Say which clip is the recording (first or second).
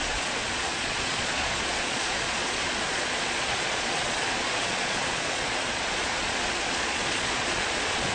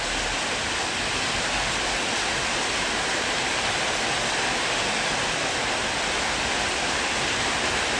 second